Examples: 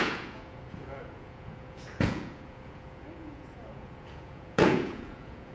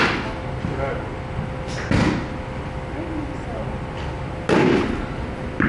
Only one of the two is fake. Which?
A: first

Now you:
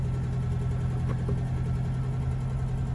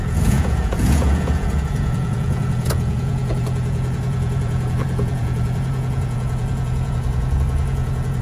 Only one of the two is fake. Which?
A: second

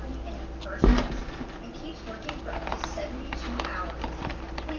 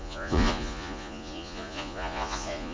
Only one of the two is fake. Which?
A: second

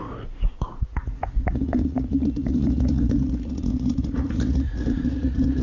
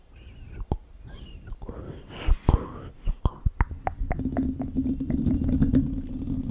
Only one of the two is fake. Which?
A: first